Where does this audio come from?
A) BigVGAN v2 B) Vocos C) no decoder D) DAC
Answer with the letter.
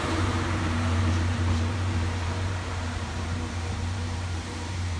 A